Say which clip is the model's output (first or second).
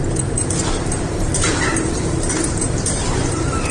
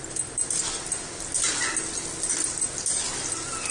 first